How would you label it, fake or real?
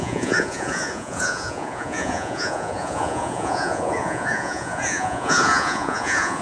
fake